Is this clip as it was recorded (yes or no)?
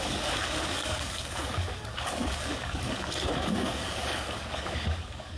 no